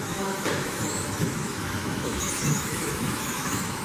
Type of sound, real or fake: fake